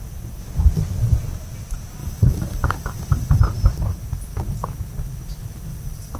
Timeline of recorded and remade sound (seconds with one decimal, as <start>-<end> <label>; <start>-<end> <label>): 0.0-2.0 recorded; 2.0-3.4 remade; 3.4-5.7 recorded; 5.7-6.2 remade